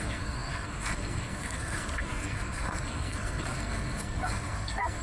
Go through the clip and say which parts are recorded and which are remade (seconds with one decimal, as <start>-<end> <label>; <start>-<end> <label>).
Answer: 0.0-5.0 remade